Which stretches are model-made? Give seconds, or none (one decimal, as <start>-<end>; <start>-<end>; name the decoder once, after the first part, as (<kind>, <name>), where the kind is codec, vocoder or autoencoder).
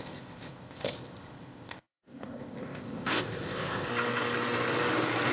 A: 0.0-3.9 (codec, ZipCodec)